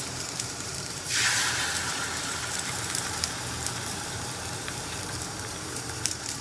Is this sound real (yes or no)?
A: no